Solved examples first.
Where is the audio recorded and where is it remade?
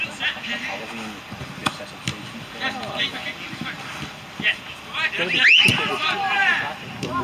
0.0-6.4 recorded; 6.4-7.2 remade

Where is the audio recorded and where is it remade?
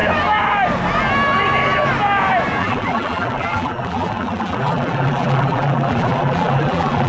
0.0-2.6 recorded; 2.6-7.1 remade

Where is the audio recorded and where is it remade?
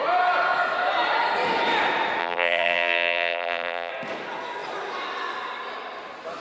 0.0-2.2 recorded; 2.2-3.9 remade; 3.9-6.4 recorded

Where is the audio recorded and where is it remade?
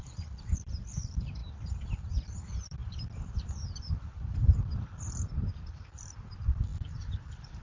0.0-7.6 remade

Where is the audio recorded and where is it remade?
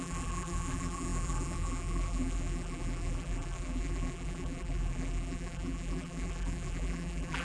0.0-7.4 remade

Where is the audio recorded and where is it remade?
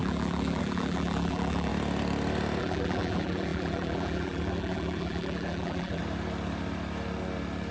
0.0-1.7 remade; 1.7-2.6 recorded; 2.6-6.0 remade; 6.0-7.7 recorded